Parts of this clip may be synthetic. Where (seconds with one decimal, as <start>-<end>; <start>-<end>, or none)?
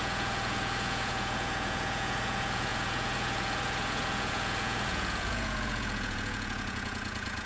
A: 0.0-7.5